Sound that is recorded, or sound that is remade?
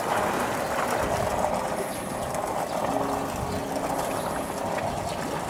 recorded